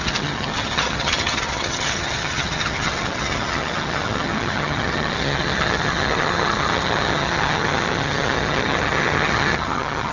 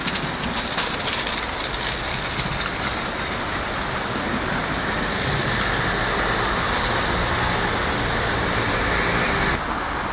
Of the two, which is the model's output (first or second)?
first